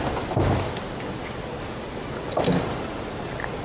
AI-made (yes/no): no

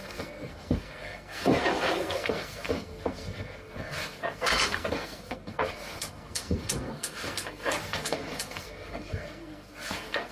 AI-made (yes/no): yes